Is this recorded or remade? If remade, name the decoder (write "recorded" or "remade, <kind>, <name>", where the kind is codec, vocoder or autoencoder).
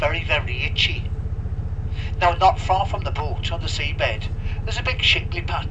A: recorded